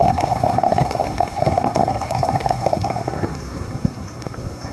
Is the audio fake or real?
fake